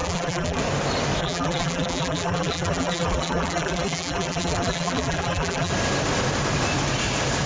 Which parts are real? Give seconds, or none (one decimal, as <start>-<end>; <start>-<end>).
0.6-1.2; 5.7-7.5